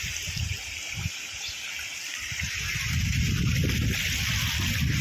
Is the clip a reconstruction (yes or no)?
no